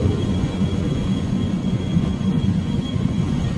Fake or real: fake